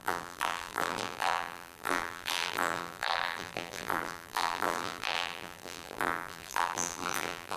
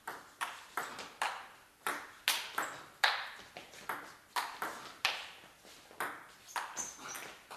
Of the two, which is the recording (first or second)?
second